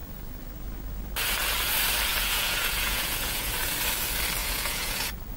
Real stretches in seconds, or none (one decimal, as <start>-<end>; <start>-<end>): 0.5-2.1; 3.5-4.4